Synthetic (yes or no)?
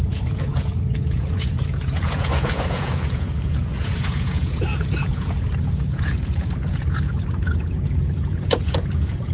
yes